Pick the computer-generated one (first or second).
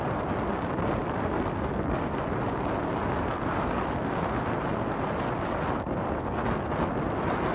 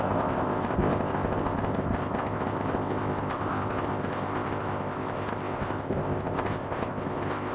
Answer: second